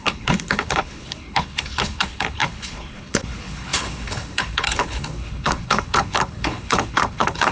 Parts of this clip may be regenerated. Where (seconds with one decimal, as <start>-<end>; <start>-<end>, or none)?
0.0-7.5